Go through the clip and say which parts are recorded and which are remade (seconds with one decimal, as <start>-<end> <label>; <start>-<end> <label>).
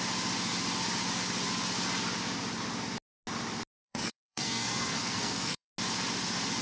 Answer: 0.0-3.8 recorded; 3.8-5.7 remade; 5.7-6.6 recorded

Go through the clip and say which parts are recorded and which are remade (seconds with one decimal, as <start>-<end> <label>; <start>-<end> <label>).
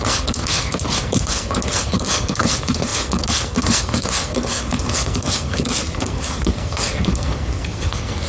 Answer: 0.0-8.3 remade